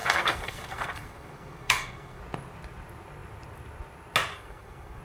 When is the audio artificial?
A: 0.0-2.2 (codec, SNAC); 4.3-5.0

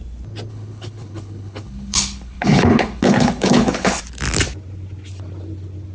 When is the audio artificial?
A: 0.5-4.0 (codec, HILCodec)

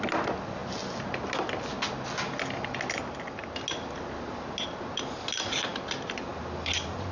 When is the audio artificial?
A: none